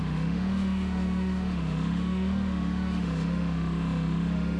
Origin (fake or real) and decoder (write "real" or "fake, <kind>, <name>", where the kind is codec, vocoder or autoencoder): fake, autoencoder, DAC-VAE